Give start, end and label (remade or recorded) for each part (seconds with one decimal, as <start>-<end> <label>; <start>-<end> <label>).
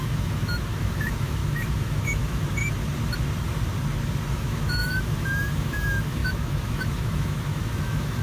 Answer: 0.0-2.6 remade; 2.6-4.3 recorded; 4.3-8.2 remade